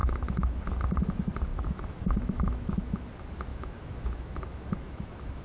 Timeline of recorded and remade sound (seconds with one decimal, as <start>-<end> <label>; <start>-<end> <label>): 0.0-0.6 remade; 0.6-1.5 recorded; 1.5-3.1 remade; 3.1-3.5 recorded; 3.5-5.4 remade